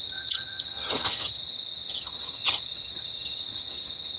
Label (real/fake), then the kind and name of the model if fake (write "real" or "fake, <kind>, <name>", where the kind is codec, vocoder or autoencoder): fake, vocoder, HiFi-GAN